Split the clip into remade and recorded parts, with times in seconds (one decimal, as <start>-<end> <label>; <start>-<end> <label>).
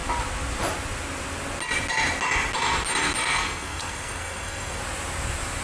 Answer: 0.0-3.2 recorded; 3.2-4.8 remade; 4.8-5.6 recorded